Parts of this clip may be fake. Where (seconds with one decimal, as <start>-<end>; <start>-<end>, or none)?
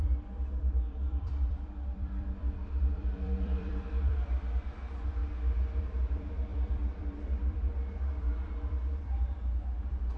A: 0.0-5.2; 5.8-10.2